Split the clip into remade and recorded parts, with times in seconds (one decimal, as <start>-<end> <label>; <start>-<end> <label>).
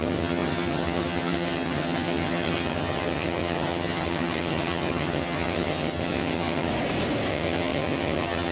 0.0-6.7 remade; 6.7-7.3 recorded; 7.3-8.5 remade